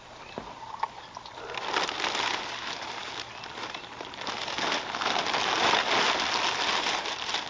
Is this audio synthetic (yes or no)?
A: no